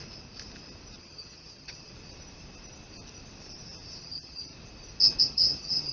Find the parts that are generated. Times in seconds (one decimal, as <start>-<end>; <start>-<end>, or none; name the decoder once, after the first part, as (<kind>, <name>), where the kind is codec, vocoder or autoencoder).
1.0-1.9 (vocoder, HiFi-GAN); 4.0-4.5; 5.2-5.9